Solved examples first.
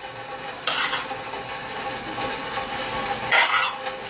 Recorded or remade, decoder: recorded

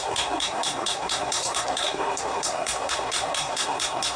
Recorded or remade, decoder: remade, codec, SNAC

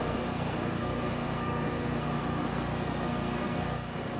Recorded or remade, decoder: remade, codec, SNAC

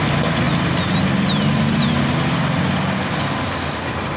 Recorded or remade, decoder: recorded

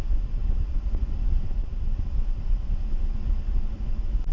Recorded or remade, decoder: recorded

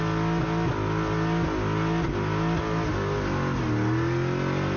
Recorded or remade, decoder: recorded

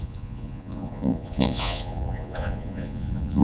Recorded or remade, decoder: remade, vocoder, Vocos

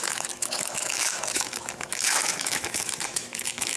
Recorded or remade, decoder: remade, autoencoder, DAC-VAE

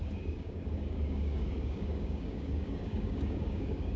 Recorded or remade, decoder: remade, codec, DAC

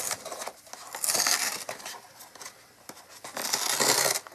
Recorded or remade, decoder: recorded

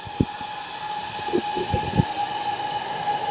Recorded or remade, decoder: recorded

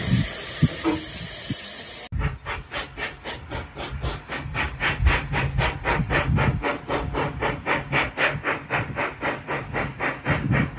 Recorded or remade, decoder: recorded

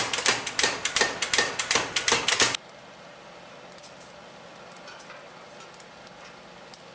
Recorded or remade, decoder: recorded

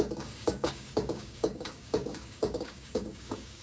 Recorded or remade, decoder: remade, codec, DAC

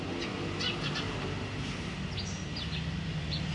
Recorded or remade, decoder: recorded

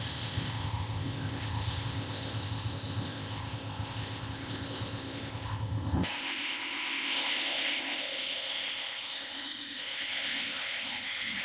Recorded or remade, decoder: remade, codec, ZipCodec